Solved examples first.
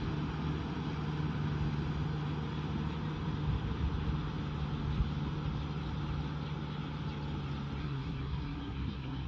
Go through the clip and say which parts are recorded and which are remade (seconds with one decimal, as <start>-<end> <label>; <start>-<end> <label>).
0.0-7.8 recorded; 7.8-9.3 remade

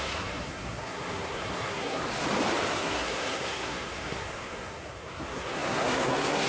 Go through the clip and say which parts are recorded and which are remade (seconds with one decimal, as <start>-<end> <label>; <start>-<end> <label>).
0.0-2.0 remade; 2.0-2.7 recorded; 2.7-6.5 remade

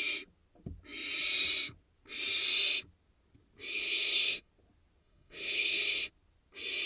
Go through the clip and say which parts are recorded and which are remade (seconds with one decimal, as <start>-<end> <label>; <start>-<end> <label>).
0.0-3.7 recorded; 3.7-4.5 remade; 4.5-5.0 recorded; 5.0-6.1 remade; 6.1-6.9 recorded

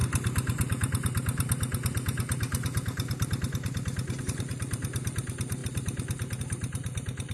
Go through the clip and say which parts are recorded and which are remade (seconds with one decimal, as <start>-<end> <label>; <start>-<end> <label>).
0.0-7.3 recorded

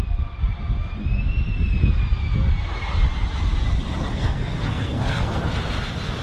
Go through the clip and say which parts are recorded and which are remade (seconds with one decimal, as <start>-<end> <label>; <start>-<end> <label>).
0.0-4.1 recorded; 4.1-5.4 remade; 5.4-6.2 recorded

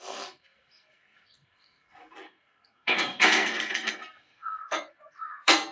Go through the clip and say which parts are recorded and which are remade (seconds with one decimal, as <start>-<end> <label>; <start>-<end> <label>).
0.0-5.7 remade

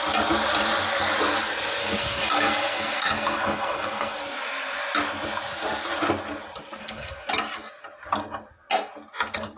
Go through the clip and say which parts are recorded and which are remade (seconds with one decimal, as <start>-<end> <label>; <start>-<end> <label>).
0.0-1.8 recorded; 1.8-4.2 remade; 4.2-6.8 recorded; 6.8-7.3 remade; 7.3-9.6 recorded

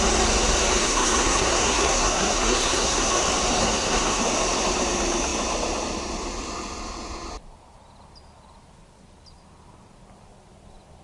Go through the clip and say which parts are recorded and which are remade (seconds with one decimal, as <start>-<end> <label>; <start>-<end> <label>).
0.0-0.8 recorded; 0.8-3.1 remade; 3.1-3.6 recorded; 3.6-4.2 remade; 4.2-11.0 recorded